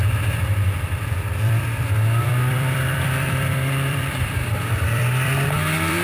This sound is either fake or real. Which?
fake